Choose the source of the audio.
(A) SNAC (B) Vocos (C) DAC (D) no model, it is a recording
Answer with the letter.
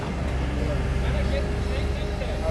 D